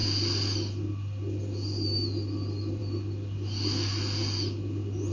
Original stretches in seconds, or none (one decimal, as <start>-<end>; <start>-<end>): 0.0-5.1